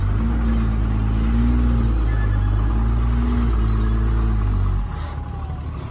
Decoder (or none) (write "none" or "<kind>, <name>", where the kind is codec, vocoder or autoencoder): none